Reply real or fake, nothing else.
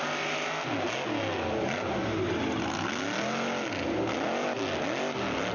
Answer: real